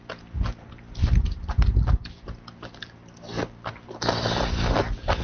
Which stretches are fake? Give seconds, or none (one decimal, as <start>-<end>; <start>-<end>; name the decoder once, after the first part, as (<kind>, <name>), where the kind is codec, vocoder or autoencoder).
none